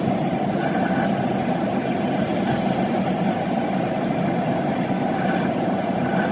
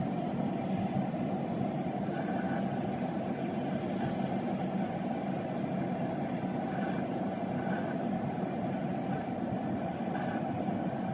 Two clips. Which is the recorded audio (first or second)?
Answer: second